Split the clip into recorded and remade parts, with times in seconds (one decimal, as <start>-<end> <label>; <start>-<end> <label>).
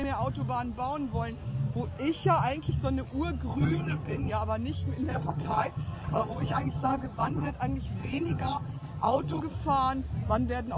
0.0-3.5 recorded; 3.5-4.3 remade; 4.3-5.1 recorded; 5.1-7.5 remade; 7.5-8.0 recorded; 8.0-9.4 remade; 9.4-10.8 recorded